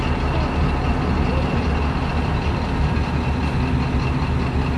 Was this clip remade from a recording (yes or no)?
no